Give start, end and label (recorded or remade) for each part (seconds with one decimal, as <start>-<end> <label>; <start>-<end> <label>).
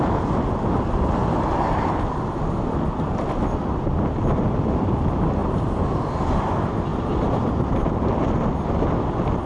0.0-5.4 recorded; 5.4-5.9 remade; 5.9-6.9 recorded; 6.9-7.5 remade; 7.5-9.5 recorded